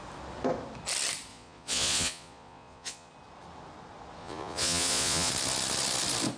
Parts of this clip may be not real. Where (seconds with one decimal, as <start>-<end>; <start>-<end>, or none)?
1.3-3.1; 4.2-5.3